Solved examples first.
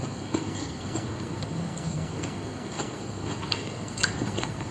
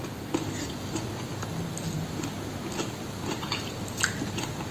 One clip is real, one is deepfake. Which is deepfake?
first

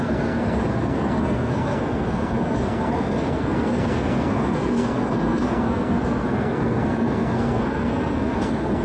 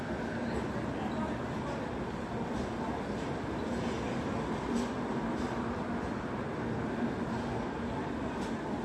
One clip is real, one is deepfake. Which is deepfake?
first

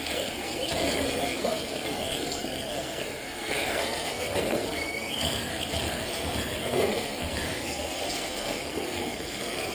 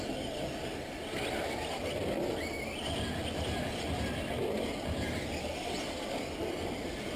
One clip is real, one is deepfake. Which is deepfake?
first